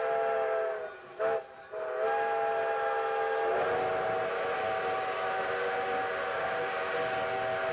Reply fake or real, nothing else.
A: real